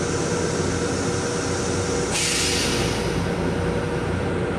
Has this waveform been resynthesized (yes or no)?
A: no